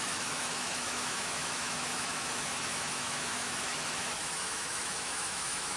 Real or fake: fake